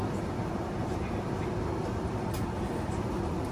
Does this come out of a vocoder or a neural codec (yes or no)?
no